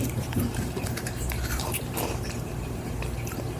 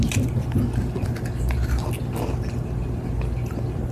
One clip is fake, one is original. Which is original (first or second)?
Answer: second